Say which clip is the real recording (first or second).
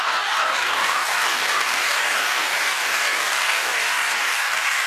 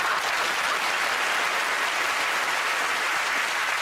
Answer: second